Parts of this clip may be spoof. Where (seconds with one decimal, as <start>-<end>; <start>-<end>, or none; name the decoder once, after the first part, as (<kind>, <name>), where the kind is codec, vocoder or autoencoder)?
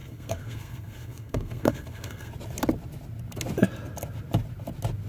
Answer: 0.0-2.3 (codec, SNAC)